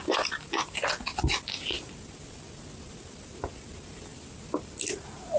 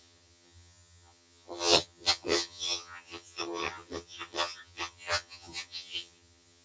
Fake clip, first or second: second